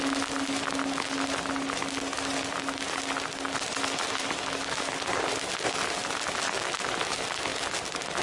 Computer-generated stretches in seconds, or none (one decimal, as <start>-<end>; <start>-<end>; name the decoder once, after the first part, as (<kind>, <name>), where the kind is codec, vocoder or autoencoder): none